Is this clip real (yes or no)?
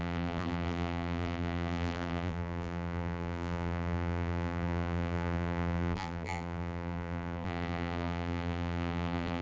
no